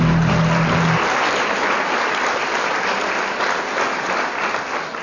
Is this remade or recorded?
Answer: recorded